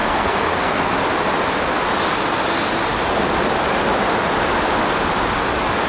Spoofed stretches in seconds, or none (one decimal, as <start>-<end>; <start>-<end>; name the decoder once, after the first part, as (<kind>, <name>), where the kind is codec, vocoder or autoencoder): 0.0-0.9 (codec, SNAC)